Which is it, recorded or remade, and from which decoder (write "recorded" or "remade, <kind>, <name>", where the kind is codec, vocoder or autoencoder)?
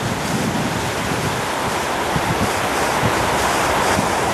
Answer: recorded